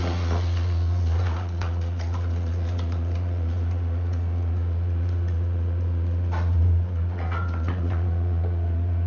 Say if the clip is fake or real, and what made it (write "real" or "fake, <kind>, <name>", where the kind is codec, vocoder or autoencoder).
fake, vocoder, Vocos